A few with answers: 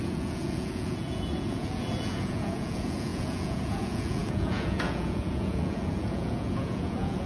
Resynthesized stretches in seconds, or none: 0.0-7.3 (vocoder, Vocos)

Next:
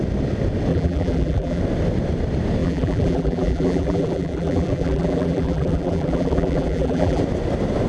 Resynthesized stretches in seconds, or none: 0.7-1.6 (vocoder, BigVGAN v2); 2.6-7.2

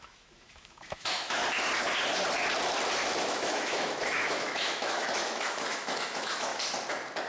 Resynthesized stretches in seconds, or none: 0.0-1.4 (autoencoder, DAC-VAE); 3.2-6.5

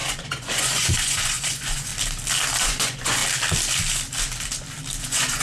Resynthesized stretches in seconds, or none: 0.0-1.9 (vocoder, Vocos); 2.6-3.2; 5.0-5.4